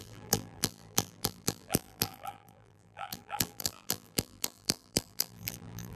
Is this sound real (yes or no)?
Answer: no